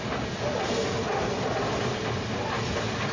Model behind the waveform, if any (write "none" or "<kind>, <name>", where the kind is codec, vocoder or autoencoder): none